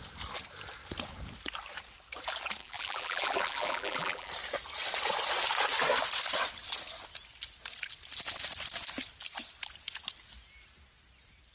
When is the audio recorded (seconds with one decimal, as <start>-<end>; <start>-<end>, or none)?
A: 0.0-2.6; 4.3-11.5